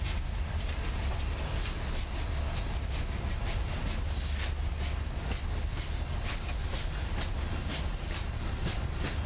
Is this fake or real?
real